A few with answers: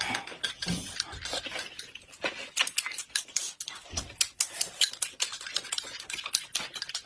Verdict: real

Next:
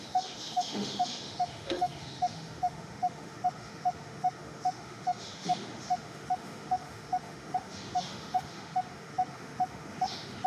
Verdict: fake